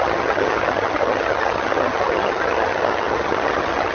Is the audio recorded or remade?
remade